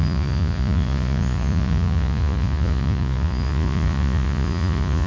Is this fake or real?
fake